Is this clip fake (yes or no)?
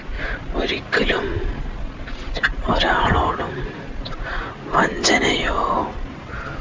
no